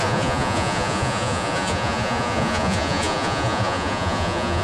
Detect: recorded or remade remade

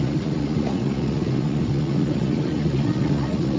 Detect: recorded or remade remade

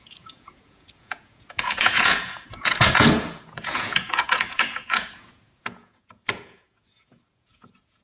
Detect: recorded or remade remade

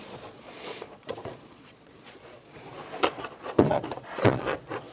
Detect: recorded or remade remade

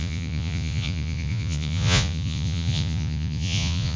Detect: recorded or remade remade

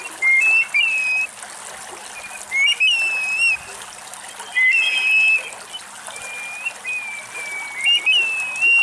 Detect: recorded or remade recorded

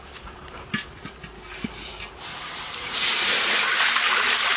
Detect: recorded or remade recorded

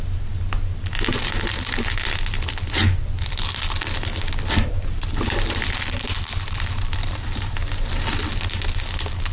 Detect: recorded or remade recorded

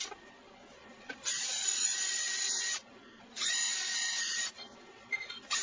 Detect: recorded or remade remade